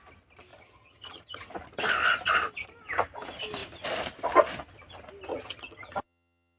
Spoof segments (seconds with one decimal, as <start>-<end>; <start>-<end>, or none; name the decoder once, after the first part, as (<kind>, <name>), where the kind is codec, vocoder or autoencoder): 0.5-1.5 (vocoder, HiFi-GAN); 5.3-6.6